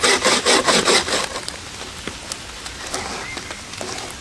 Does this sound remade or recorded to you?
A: recorded